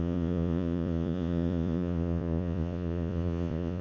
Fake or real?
fake